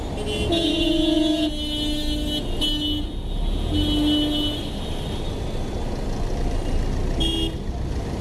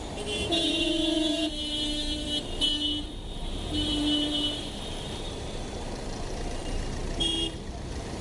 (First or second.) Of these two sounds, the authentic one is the first